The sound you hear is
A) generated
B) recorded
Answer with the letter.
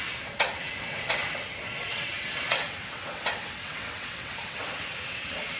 A